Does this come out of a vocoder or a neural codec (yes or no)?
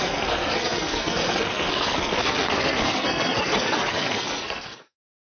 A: yes